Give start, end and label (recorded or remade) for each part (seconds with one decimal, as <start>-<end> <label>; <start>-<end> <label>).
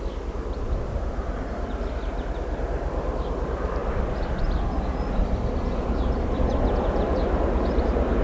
0.0-8.2 recorded